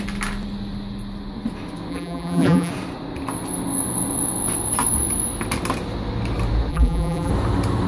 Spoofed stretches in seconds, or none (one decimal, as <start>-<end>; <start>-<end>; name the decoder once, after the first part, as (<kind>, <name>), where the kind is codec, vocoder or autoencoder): 1.9-2.7 (vocoder, BigVGAN v2); 6.7-7.3